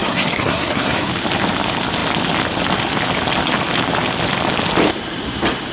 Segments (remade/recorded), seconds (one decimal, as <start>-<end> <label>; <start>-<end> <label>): 0.0-1.1 remade; 1.1-5.7 recorded